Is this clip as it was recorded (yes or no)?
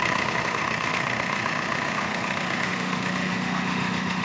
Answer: no